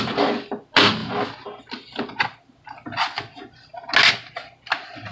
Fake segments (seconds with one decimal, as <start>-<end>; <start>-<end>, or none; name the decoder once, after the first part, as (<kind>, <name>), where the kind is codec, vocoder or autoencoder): none

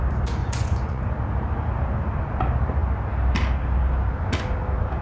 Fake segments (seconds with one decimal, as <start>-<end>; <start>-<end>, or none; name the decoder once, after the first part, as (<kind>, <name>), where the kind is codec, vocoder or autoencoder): 0.4-1.0 (vocoder, Vocos)

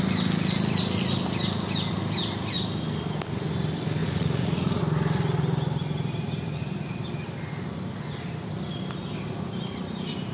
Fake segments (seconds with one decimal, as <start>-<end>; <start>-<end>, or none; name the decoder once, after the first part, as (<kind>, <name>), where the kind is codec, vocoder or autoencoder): 4.0-4.8 (vocoder, Vocos)

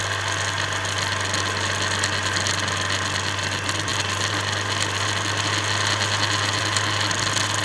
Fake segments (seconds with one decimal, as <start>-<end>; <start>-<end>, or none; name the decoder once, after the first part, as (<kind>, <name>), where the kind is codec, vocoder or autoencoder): none

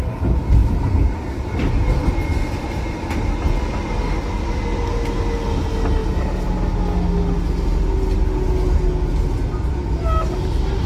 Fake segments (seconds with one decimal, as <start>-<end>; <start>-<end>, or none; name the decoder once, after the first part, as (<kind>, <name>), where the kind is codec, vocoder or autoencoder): none